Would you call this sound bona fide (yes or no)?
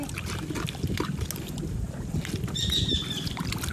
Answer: yes